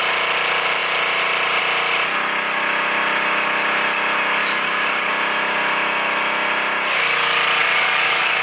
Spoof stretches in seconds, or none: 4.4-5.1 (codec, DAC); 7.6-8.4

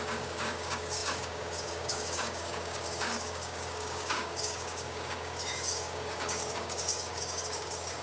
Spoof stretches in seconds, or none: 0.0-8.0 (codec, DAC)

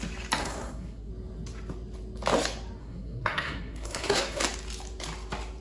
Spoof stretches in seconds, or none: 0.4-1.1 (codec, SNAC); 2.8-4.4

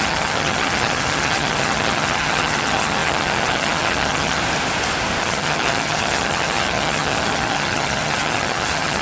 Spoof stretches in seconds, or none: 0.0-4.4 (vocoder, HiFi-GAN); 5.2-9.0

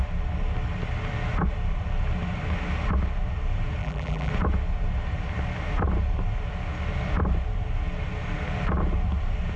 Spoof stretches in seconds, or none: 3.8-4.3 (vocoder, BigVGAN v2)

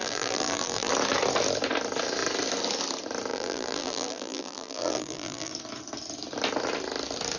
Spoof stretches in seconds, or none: 0.0-0.9 (vocoder, BigVGAN v2); 3.3-5.5

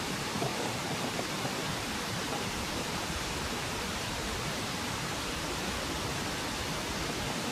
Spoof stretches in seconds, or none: 0.0-6.1 (vocoder, BigVGAN v2)